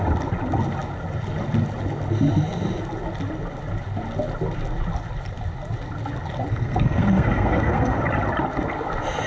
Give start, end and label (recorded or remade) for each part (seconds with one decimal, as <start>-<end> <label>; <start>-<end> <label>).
0.0-6.5 recorded; 6.5-8.0 remade; 8.0-9.3 recorded